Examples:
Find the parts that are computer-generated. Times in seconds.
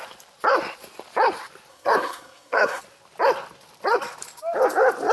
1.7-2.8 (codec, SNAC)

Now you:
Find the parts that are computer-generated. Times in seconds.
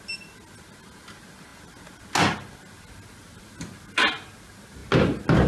none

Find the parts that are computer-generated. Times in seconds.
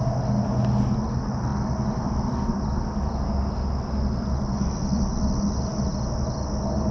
none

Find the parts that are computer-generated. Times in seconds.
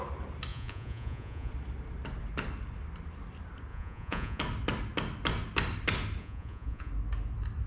0.5-1.5 (vocoder, Vocos); 3.7-4.4; 6.2-6.9